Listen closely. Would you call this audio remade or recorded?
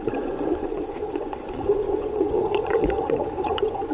remade